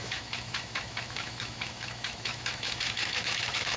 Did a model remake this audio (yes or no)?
yes